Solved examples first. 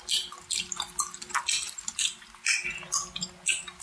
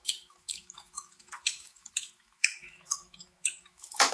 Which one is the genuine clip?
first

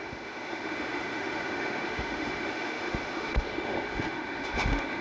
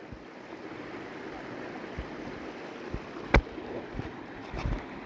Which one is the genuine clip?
second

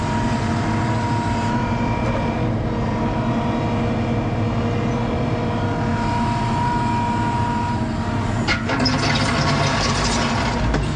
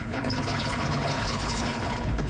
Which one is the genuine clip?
first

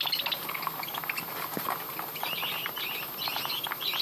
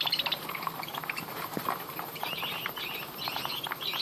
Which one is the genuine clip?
first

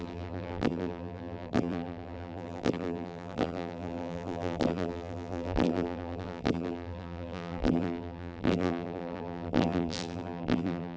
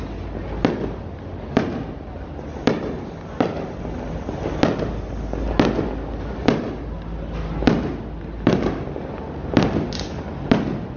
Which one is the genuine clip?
second